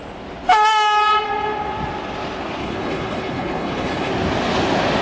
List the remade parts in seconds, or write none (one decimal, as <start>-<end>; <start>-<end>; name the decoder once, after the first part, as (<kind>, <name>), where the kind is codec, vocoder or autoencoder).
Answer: 2.6-4.1 (codec, HILCodec)